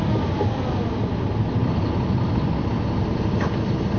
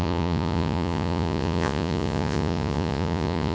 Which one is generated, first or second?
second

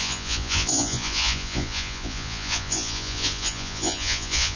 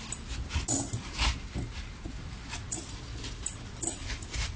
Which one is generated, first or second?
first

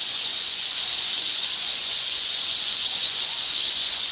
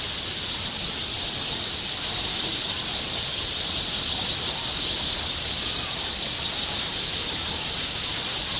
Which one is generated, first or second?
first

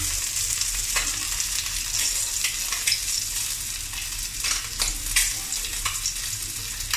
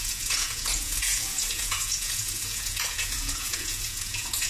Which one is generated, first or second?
second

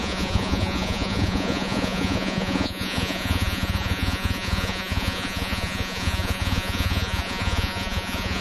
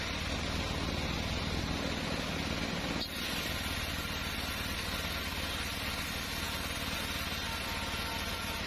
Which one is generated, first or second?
first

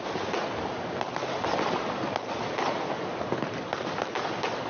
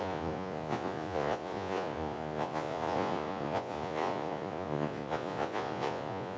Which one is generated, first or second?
second